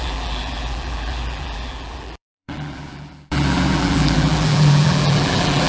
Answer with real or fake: fake